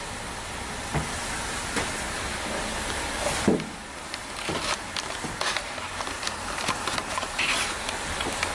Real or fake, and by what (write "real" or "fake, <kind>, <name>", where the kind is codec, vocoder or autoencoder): real